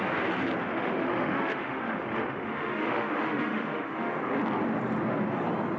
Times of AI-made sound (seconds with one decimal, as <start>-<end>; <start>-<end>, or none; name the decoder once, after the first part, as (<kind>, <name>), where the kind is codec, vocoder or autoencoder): 0.7-4.2 (autoencoder, DAC-VAE)